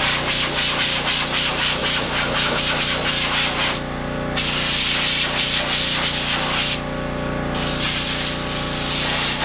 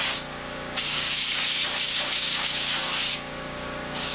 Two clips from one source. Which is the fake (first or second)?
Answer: second